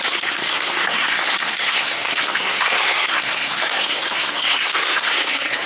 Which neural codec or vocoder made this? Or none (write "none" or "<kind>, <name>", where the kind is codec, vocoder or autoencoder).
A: codec, SNAC